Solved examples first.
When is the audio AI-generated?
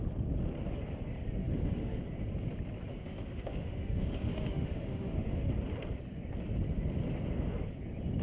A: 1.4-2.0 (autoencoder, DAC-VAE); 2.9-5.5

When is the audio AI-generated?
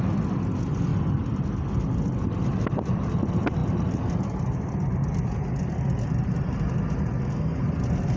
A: none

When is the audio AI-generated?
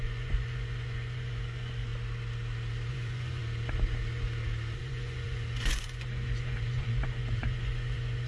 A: 0.0-1.9 (vocoder, Vocos); 2.9-3.4; 4.8-8.3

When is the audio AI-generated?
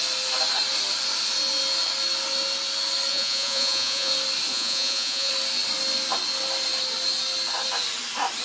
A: 3.1-4.1 (vocoder, Vocos); 4.5-5.3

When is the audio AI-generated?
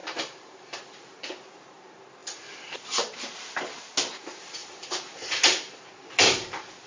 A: 0.0-0.8 (vocoder, BigVGAN v2); 2.2-3.3; 4.6-5.9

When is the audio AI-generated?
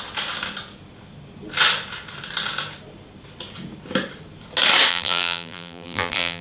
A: 4.9-6.4 (vocoder, BigVGAN v2)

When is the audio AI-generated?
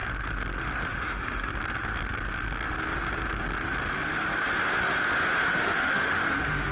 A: 0.9-1.5 (autoencoder, DAC-VAE); 5.5-6.7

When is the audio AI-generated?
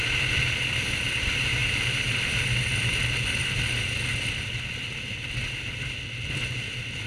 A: none